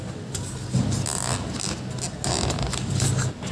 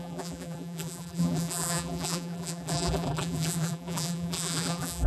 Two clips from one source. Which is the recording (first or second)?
first